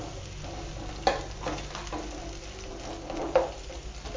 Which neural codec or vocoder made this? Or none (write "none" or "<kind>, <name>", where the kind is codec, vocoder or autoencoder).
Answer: none